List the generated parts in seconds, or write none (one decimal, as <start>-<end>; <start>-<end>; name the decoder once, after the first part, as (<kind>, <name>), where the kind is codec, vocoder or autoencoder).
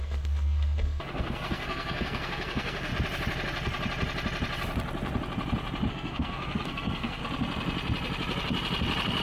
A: 0.0-2.9 (codec, SNAC); 5.9-7.2